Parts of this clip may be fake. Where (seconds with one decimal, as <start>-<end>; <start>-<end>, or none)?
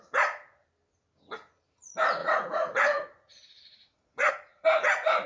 2.2-4.3